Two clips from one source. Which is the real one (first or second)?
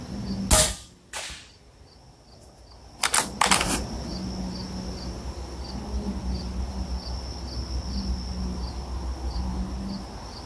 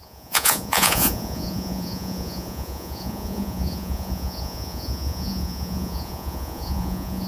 first